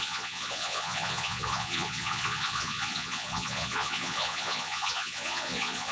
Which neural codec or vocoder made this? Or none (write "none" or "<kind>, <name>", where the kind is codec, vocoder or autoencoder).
vocoder, Vocos